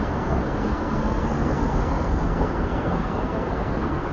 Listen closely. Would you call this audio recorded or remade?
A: remade